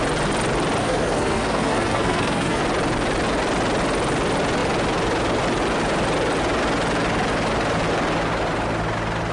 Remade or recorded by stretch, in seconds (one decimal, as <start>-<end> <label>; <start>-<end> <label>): 0.0-0.8 recorded; 0.8-2.6 remade; 2.6-9.3 recorded